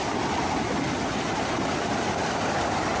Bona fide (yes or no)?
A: no